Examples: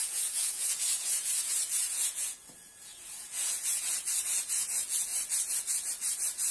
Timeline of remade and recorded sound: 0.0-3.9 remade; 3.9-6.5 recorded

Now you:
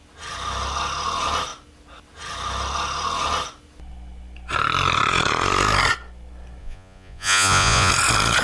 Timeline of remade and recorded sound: 0.0-6.6 recorded; 6.6-7.9 remade; 7.9-8.4 recorded

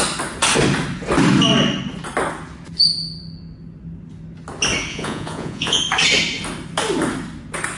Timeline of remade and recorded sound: 0.0-4.9 recorded; 4.9-5.8 remade; 5.8-7.8 recorded

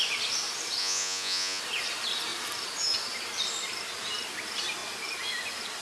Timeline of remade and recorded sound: 0.0-0.8 recorded; 0.8-1.6 remade; 1.6-5.8 recorded

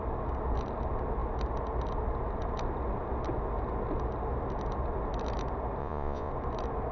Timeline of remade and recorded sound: 0.0-5.8 recorded; 5.8-6.3 remade; 6.3-6.9 recorded

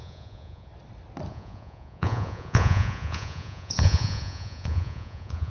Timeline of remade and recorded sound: 0.0-0.7 remade; 0.7-1.3 recorded; 1.3-5.5 remade